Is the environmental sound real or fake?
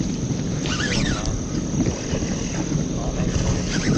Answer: real